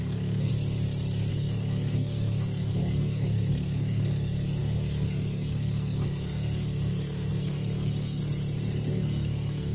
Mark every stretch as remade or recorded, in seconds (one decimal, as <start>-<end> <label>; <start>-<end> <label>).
0.0-0.5 remade; 0.5-1.3 recorded; 1.3-8.2 remade; 8.2-8.9 recorded; 8.9-9.7 remade